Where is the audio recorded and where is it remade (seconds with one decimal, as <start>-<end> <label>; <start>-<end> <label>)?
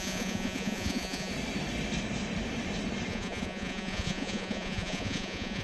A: 0.0-1.3 remade; 1.3-3.1 recorded; 3.1-5.6 remade